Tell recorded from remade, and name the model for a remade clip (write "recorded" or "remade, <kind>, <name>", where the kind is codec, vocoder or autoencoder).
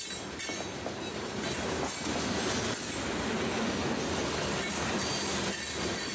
recorded